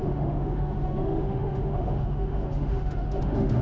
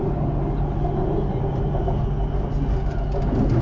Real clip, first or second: second